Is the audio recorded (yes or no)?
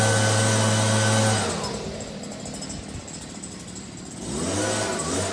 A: yes